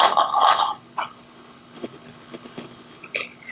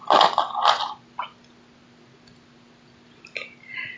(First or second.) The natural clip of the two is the second